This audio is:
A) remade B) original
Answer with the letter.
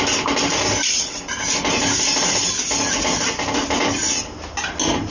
B